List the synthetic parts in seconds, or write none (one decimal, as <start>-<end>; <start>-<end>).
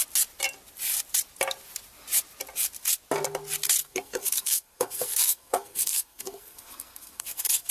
3.8-7.7